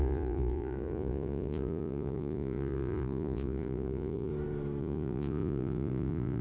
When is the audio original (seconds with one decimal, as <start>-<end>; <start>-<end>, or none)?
4.3-4.8